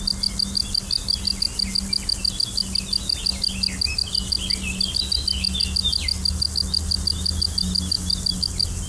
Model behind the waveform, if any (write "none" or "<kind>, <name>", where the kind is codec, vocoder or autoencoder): none